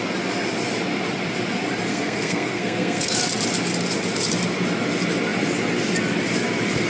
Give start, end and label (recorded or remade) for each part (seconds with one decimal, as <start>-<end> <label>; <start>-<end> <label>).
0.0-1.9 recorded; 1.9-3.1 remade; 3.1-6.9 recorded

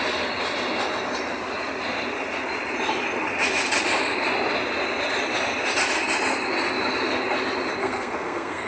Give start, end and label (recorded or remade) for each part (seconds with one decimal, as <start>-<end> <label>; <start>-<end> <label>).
0.0-7.8 recorded; 7.8-8.7 remade

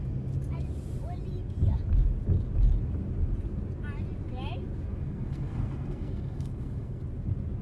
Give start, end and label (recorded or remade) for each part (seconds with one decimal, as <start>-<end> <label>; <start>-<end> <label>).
0.0-4.9 recorded; 4.9-7.0 remade; 7.0-7.6 recorded